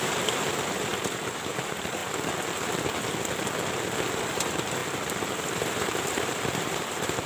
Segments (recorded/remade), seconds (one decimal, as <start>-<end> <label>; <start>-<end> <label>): 0.0-2.0 remade; 2.0-4.2 recorded; 4.2-4.8 remade; 4.8-5.6 recorded; 5.6-7.3 remade